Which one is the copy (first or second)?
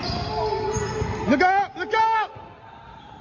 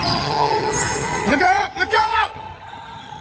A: second